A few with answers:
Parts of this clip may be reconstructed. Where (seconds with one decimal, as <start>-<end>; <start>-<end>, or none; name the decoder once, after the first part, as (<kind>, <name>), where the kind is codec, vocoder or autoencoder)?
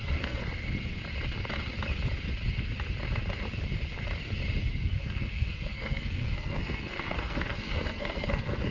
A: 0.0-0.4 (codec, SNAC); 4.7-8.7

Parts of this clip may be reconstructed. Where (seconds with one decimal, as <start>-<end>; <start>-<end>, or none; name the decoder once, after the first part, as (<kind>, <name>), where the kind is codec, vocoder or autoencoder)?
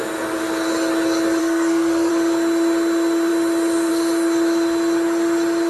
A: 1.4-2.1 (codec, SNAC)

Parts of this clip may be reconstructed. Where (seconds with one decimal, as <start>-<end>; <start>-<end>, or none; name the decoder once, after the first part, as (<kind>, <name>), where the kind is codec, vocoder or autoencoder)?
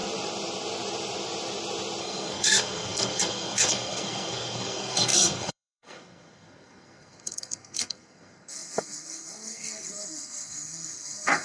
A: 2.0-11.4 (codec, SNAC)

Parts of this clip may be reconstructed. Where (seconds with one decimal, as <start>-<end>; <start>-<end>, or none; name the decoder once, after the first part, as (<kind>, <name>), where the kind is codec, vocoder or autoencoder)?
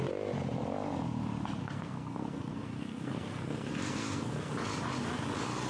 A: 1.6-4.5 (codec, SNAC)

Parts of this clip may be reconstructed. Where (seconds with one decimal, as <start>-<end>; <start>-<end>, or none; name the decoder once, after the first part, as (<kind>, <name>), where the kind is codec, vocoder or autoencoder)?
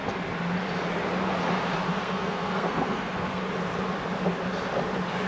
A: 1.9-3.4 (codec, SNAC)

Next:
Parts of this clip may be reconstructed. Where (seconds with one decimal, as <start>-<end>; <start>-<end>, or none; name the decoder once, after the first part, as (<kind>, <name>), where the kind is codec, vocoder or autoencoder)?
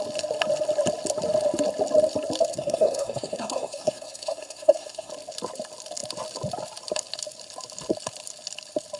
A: 2.5-5.1 (codec, SNAC)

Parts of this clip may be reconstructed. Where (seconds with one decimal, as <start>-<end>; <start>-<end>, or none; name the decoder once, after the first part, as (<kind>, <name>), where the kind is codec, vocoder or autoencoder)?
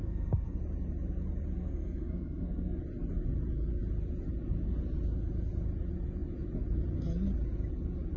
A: 0.0-0.6 (codec, SNAC); 1.6-2.8